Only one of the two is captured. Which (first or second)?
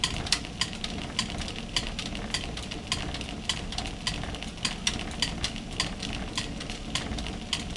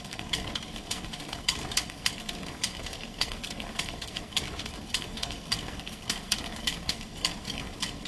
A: first